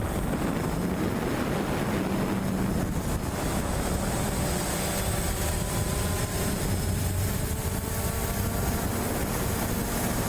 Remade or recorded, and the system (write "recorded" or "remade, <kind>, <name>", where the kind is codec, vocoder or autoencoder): recorded